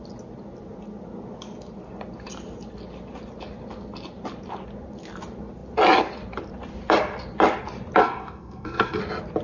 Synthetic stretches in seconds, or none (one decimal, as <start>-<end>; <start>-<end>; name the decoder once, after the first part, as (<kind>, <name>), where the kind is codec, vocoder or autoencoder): 8.0-9.0 (codec, SNAC)